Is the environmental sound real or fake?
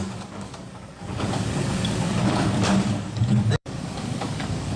fake